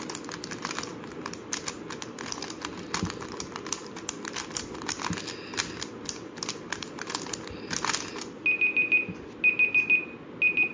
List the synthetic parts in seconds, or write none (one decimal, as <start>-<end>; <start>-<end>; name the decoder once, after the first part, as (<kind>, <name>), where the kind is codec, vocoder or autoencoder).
none